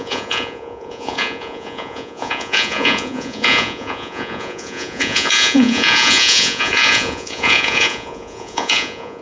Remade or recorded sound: remade